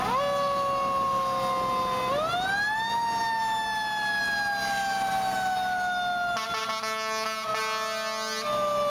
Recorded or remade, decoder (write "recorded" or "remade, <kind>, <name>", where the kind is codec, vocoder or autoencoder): recorded